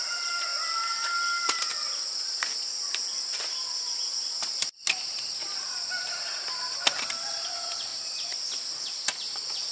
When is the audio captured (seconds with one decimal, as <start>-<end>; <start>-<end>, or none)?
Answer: 0.0-5.5; 6.7-7.9; 8.4-9.7

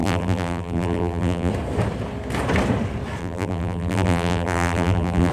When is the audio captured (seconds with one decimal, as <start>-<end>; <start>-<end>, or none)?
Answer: 1.5-3.2

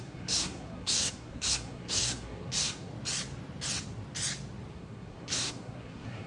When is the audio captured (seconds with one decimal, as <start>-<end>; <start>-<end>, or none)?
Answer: 2.9-4.7

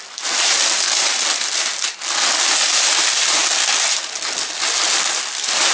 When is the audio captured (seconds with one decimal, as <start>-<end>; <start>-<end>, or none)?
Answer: 0.0-5.7

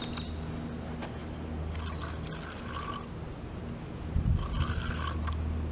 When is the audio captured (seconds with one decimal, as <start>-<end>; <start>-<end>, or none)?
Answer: 0.0-5.7

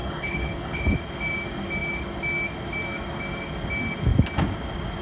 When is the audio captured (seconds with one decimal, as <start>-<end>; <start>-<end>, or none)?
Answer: 0.8-5.0

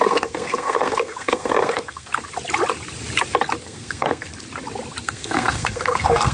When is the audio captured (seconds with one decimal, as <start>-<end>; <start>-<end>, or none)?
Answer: 2.1-3.6; 4.3-5.0